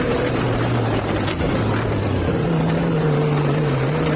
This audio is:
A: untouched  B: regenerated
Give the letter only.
B